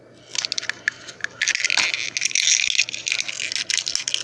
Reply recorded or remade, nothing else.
recorded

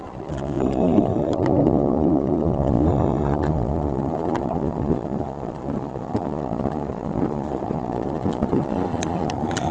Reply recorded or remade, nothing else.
remade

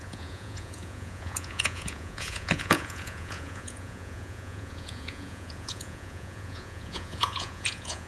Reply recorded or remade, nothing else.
remade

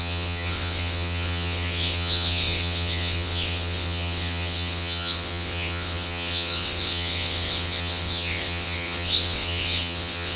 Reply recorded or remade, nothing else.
remade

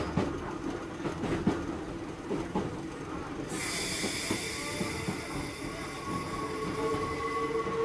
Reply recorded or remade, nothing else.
recorded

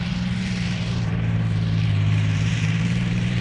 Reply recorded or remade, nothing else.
remade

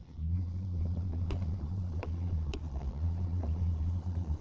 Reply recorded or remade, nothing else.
remade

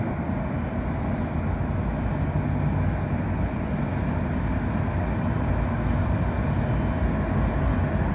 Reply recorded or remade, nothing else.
recorded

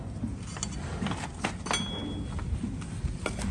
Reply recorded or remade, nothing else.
recorded